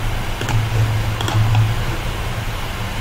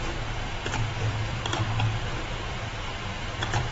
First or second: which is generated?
second